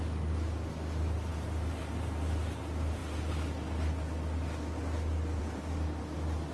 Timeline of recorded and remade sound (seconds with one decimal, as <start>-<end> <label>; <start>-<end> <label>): 0.0-6.5 recorded

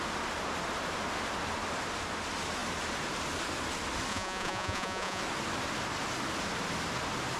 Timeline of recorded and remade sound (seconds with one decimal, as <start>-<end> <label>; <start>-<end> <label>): 0.0-4.1 recorded; 4.1-5.2 remade; 5.2-7.4 recorded

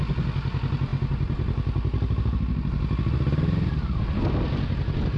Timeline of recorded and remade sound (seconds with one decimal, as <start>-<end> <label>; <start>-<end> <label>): 0.0-5.2 recorded

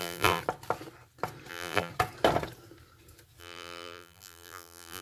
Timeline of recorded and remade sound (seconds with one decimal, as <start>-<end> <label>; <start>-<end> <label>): 0.0-0.4 remade; 0.4-1.5 recorded; 1.5-1.9 remade; 1.9-3.4 recorded; 3.4-5.0 remade

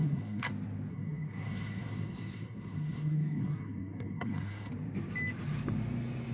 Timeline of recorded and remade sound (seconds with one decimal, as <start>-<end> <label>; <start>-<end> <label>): 0.0-0.5 remade; 0.5-0.9 recorded; 0.9-4.7 remade; 4.7-6.3 recorded

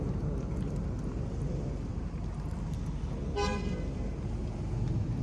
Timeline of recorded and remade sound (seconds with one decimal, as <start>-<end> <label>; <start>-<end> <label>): 0.0-5.2 recorded

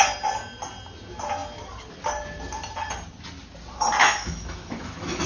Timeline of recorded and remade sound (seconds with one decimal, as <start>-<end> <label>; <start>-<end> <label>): 0.0-4.0 recorded; 4.0-5.3 remade

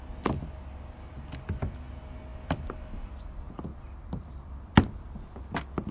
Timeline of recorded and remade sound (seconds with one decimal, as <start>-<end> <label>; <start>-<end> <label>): 0.0-5.9 recorded